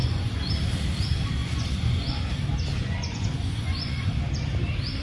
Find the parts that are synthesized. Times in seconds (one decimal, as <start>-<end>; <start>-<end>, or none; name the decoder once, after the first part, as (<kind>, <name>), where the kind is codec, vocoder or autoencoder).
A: 0.0-0.5 (vocoder, Vocos); 1.4-2.2; 2.8-4.1